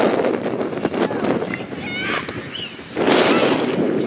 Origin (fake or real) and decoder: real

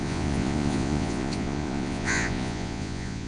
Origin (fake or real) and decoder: fake, vocoder, Vocos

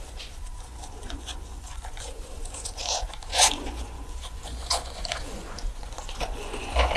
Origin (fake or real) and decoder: fake, vocoder, Vocos